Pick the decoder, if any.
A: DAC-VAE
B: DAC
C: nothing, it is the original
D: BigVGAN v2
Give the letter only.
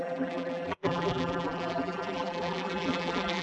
D